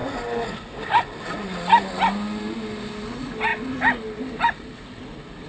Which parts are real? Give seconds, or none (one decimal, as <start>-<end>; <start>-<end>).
0.0-5.5